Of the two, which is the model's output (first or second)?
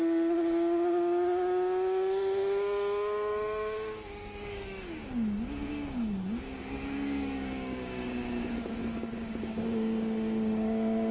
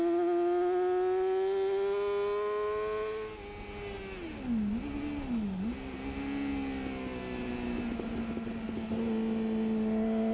first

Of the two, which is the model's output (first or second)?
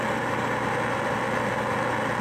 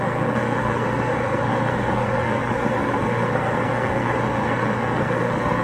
second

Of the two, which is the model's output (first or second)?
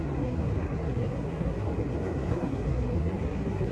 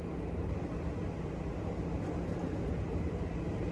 first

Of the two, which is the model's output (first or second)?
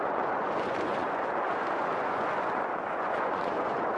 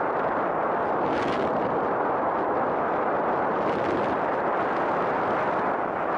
first